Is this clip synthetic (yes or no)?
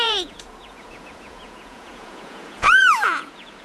yes